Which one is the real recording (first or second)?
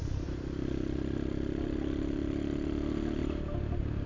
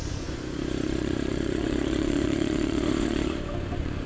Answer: first